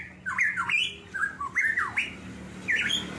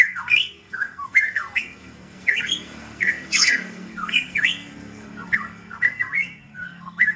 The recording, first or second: first